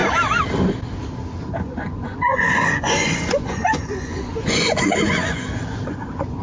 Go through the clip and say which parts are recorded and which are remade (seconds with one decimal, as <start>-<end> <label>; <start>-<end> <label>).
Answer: 0.0-1.6 recorded; 1.6-6.4 remade